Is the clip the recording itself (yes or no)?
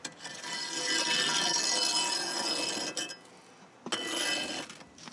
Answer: yes